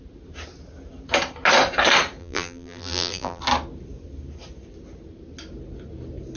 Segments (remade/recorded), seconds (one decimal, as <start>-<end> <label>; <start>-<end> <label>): 0.0-2.2 recorded; 2.2-3.4 remade; 3.4-6.4 recorded